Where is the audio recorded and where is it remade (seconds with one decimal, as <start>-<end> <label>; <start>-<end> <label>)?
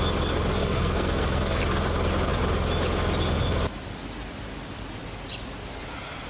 0.0-0.6 recorded; 0.6-1.6 remade; 1.6-6.3 recorded